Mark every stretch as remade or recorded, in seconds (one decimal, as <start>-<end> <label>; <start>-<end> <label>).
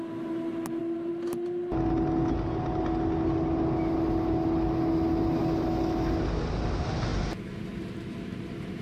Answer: 0.0-8.8 recorded